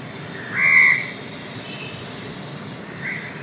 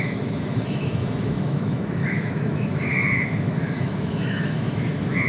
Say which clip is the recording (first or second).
first